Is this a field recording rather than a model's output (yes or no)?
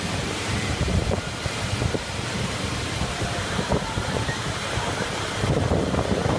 no